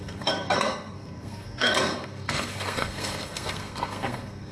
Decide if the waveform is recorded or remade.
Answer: remade